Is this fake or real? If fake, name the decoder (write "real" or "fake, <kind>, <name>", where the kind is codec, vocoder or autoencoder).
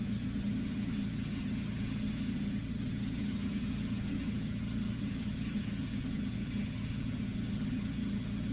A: fake, vocoder, HiFi-GAN